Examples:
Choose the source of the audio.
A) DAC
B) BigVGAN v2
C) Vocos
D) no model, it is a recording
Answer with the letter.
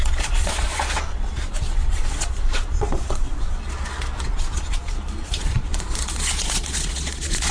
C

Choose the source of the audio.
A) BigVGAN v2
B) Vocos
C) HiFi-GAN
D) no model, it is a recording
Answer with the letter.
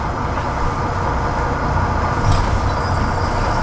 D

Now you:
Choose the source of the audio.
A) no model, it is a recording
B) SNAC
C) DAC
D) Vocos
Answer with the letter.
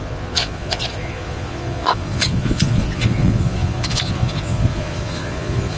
D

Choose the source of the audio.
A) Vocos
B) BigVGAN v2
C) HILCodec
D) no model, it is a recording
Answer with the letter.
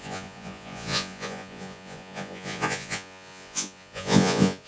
A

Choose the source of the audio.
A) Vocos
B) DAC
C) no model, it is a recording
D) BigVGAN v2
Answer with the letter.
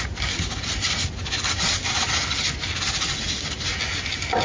C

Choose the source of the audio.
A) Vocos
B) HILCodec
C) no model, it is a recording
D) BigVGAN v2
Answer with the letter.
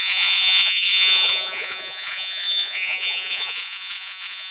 A